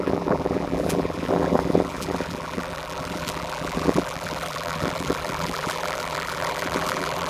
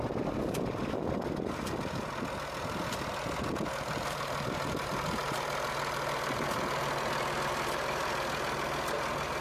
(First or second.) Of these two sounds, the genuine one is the second